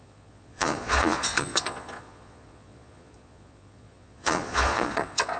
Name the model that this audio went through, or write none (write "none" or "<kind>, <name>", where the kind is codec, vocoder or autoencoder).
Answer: vocoder, Vocos